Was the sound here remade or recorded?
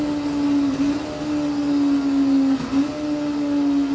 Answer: recorded